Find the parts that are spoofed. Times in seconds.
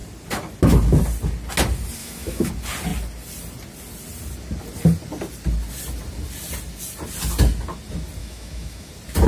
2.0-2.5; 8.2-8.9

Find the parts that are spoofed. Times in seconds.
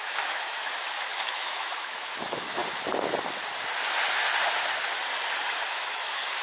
0.0-2.6; 5.7-6.4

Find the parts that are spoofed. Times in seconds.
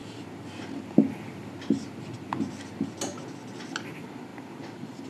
none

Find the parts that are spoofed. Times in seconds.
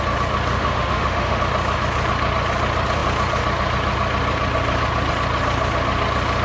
0.5-1.4